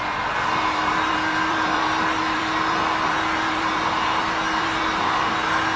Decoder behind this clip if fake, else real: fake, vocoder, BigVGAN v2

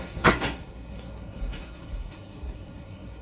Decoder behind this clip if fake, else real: fake, codec, SNAC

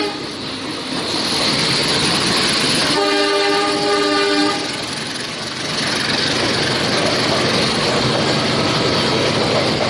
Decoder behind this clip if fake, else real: real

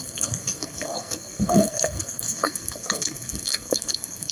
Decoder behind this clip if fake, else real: fake, codec, SNAC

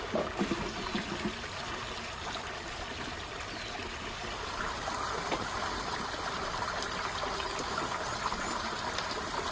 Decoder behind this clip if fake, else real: real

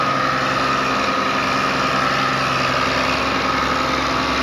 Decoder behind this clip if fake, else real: real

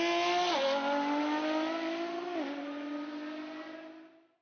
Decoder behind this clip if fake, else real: real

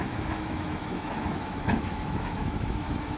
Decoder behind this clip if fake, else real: fake, autoencoder, DAC-VAE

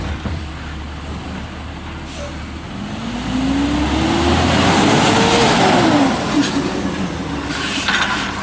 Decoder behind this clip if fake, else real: real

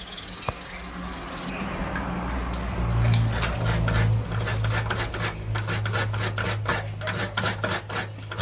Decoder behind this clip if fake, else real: real